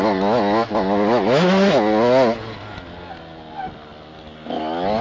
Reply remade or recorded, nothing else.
recorded